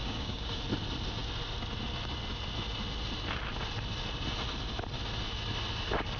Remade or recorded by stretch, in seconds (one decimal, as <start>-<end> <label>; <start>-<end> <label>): 0.0-0.6 remade; 0.6-6.2 recorded

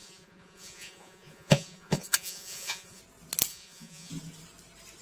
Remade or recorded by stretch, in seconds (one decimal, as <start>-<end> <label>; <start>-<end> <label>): 0.0-3.0 remade; 3.0-3.5 recorded; 3.5-4.1 remade; 4.1-5.0 recorded

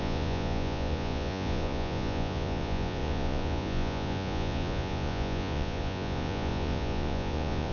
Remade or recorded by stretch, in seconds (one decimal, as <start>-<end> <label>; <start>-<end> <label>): 0.0-7.7 remade

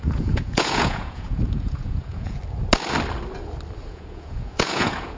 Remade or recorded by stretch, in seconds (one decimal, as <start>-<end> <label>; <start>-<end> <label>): 0.0-2.4 remade; 2.4-3.8 recorded; 3.8-5.2 remade

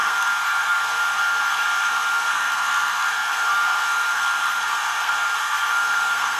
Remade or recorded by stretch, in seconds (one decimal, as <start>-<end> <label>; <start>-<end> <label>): 0.0-6.4 remade

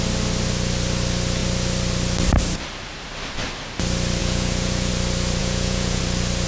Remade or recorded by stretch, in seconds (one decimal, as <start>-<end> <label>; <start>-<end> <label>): 0.0-4.2 recorded; 4.2-4.9 remade; 4.9-5.4 recorded; 5.4-6.0 remade; 6.0-6.5 recorded

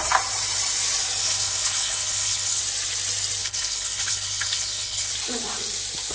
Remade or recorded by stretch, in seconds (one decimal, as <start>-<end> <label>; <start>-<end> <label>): 0.0-1.2 recorded; 1.2-2.6 remade; 2.6-3.4 recorded; 3.4-5.1 remade; 5.1-6.1 recorded

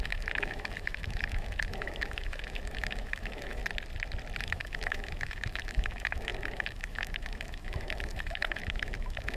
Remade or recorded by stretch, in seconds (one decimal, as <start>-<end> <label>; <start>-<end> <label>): 0.0-3.6 remade; 3.6-4.4 recorded; 4.4-9.4 remade